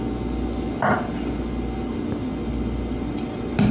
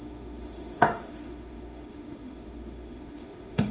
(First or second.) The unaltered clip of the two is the first